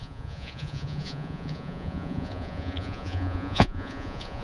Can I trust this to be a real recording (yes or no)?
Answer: no